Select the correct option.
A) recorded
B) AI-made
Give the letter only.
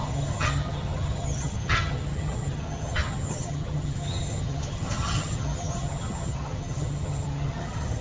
B